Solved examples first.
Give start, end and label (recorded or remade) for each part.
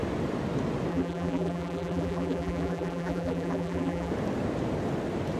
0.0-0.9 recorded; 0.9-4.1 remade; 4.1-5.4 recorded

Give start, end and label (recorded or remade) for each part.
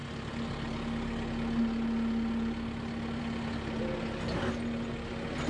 0.0-5.5 recorded